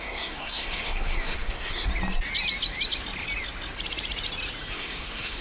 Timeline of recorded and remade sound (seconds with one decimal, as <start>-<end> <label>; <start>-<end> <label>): 0.0-1.9 remade; 1.9-4.7 recorded; 4.7-5.4 remade